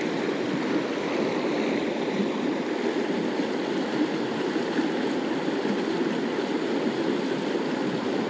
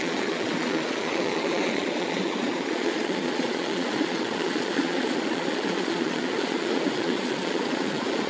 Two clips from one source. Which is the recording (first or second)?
first